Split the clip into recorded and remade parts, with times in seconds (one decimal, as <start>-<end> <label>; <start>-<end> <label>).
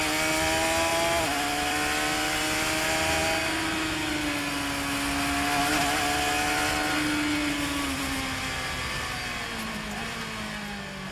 0.0-11.1 recorded